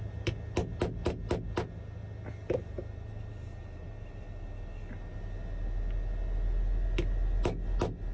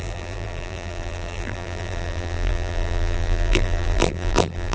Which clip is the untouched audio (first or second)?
first